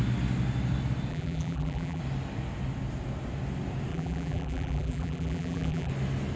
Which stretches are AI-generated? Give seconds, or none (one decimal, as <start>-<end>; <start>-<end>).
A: 1.1-2.0; 3.9-5.9